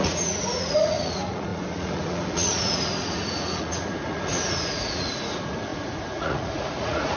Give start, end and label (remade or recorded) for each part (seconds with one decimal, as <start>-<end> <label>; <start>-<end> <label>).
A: 0.0-7.2 remade